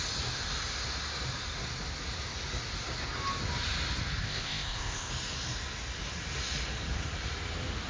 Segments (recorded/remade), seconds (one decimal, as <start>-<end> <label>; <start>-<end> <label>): 0.0-4.2 recorded; 4.2-5.1 remade; 5.1-7.9 recorded